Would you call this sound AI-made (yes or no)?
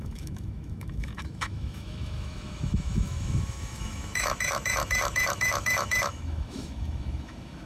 yes